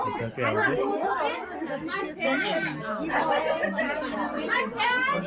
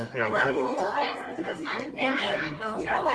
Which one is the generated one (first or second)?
second